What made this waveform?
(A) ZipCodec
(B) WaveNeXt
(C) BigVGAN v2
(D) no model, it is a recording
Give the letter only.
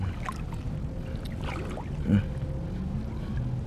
D